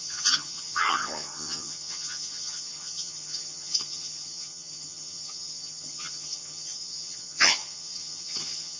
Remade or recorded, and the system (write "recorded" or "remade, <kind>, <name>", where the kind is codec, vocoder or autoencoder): remade, vocoder, HiFi-GAN